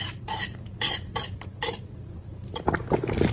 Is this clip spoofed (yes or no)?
yes